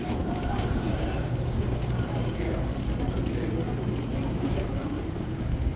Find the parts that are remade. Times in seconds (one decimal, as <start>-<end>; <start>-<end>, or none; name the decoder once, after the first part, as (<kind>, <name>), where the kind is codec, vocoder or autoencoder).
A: 0.0-2.7 (codec, DAC); 4.4-5.8